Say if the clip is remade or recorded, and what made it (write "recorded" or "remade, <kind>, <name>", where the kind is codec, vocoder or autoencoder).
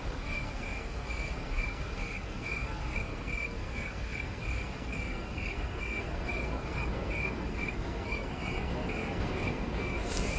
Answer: remade, codec, SNAC